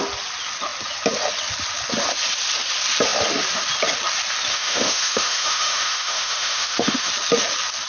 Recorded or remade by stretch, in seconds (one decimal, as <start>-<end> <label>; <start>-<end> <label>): 0.0-4.5 recorded; 4.5-7.1 remade; 7.1-7.9 recorded